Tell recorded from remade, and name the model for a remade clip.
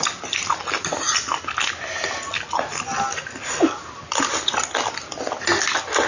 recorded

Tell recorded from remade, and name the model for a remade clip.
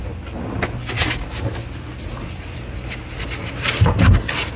recorded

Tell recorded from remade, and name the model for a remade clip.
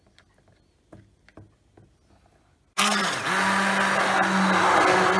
recorded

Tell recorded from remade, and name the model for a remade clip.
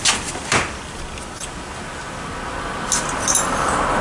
recorded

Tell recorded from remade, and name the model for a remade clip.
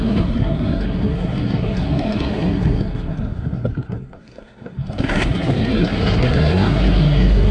remade, codec, SNAC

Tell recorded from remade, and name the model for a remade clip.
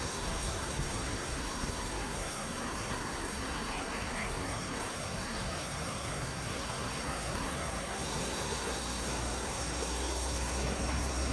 remade, codec, SNAC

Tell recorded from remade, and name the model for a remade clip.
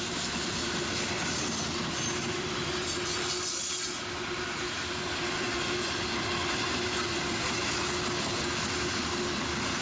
recorded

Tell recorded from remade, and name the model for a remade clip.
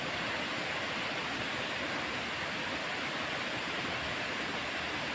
recorded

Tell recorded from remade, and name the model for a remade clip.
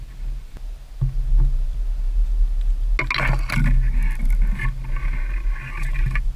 recorded